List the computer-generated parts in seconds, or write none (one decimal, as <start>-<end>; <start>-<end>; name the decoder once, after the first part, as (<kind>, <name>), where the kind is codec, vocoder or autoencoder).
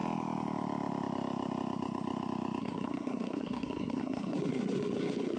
2.6-5.4 (codec, SNAC)